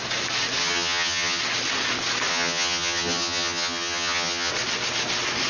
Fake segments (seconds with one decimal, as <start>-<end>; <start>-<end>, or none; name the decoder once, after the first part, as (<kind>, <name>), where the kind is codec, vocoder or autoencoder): 0.6-1.4 (vocoder, HiFi-GAN); 2.3-4.5